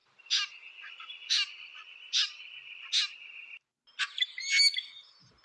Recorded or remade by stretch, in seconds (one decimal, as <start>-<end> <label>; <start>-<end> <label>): 0.0-1.0 recorded; 1.0-1.7 remade; 1.7-4.9 recorded; 4.9-5.4 remade